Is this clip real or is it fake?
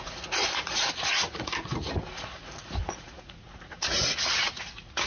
fake